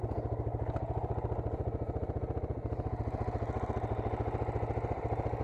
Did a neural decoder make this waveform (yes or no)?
no